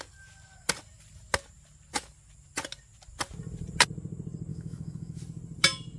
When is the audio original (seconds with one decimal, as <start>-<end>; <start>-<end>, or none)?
0.0-4.5; 5.2-6.0